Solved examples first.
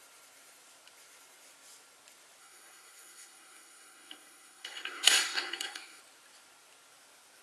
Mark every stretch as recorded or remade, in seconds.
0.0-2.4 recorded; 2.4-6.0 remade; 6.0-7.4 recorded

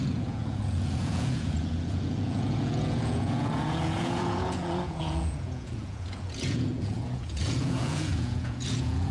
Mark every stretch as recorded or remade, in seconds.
0.0-9.1 remade

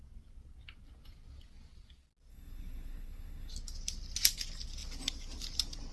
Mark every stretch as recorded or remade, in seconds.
0.0-2.3 recorded; 2.3-3.5 remade; 3.5-5.9 recorded

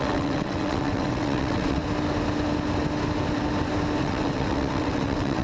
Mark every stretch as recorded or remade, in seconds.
0.0-1.8 remade; 1.8-4.0 recorded; 4.0-5.4 remade

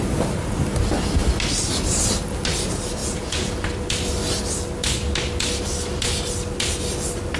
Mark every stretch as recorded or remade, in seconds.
0.0-3.0 recorded; 3.0-3.5 remade; 3.5-7.4 recorded

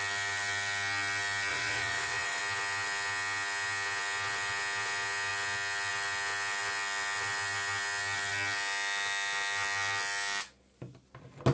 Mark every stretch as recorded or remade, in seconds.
0.0-1.5 recorded; 1.5-2.4 remade; 2.4-11.5 recorded